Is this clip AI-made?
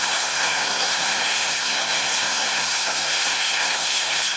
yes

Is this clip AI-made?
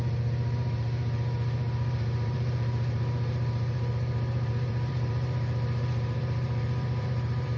yes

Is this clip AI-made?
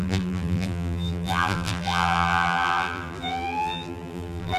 yes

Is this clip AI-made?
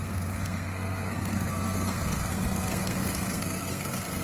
yes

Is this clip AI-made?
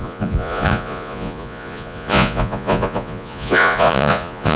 yes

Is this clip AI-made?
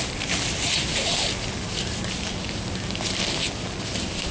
no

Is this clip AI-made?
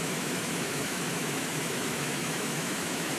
yes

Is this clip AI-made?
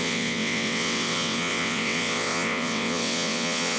yes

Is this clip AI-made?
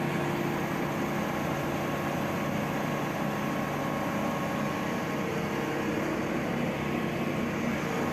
no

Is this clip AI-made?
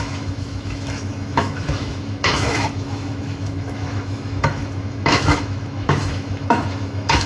yes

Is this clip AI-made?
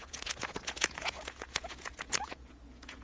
yes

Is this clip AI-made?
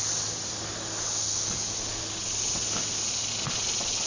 no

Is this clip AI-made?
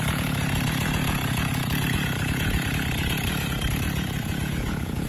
yes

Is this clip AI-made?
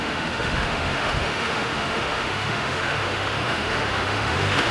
yes